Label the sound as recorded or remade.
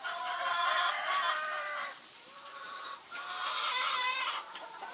remade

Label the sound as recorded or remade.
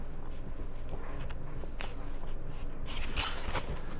recorded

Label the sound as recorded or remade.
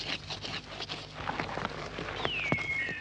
recorded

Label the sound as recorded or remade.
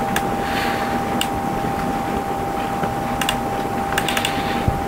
recorded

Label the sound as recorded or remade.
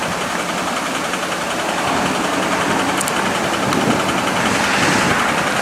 recorded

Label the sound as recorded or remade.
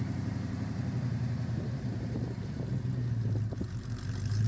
remade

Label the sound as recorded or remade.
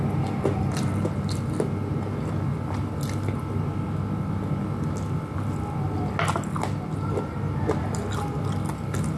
recorded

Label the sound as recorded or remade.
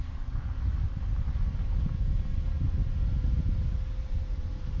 recorded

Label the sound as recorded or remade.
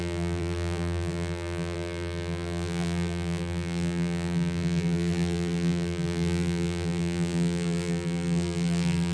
remade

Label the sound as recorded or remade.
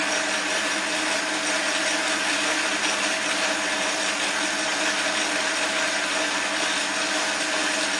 recorded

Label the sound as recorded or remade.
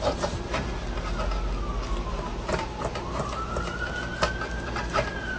recorded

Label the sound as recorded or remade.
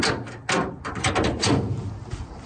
recorded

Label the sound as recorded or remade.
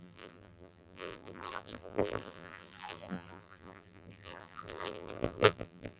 remade